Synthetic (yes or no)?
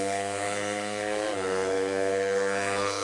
yes